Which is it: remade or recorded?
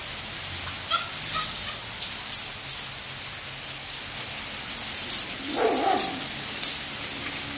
recorded